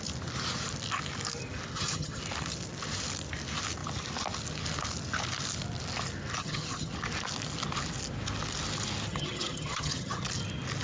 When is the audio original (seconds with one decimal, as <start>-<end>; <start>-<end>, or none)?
0.0-1.7; 2.2-6.4; 6.9-9.1; 10.2-10.8